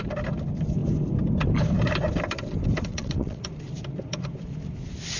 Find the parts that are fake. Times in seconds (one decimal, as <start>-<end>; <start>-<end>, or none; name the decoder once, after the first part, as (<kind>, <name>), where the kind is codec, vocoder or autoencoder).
2.9-3.4 (vocoder, WaveNeXt)